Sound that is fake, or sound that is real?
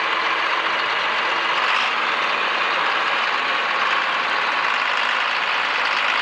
real